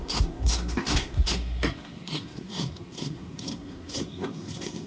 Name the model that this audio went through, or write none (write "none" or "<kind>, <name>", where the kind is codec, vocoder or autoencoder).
codec, SNAC